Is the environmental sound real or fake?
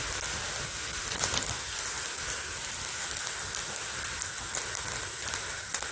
real